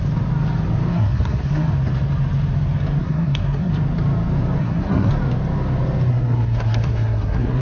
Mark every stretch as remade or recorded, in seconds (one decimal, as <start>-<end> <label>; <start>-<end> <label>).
0.0-0.9 recorded; 0.9-1.7 remade; 1.7-3.0 recorded; 3.0-3.7 remade; 3.7-4.6 recorded; 4.6-5.1 remade; 5.1-6.1 recorded; 6.1-7.6 remade